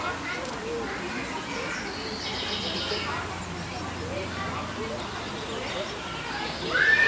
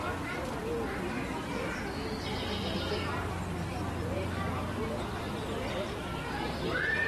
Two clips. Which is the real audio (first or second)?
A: first